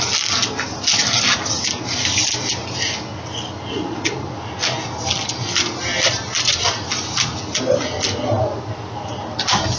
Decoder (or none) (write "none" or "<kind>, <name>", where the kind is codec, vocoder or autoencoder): none